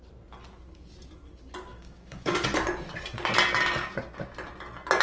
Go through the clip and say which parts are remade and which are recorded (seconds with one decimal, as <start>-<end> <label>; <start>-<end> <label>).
0.0-1.7 recorded; 1.7-2.3 remade; 2.3-5.0 recorded